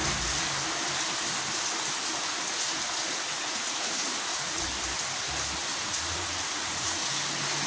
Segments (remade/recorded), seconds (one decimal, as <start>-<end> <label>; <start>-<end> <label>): 0.0-2.5 recorded; 2.5-4.7 remade; 4.7-5.8 recorded; 5.8-7.0 remade; 7.0-7.7 recorded